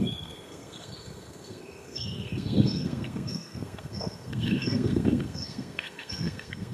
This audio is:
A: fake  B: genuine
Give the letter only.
A